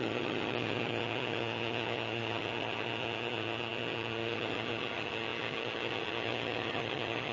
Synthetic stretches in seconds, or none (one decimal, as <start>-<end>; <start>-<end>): 0.0-7.3